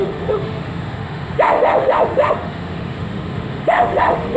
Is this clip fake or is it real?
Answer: fake